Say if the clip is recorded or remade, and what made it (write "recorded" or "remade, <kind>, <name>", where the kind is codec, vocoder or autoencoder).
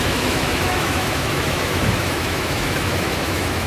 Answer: remade, autoencoder, DAC-VAE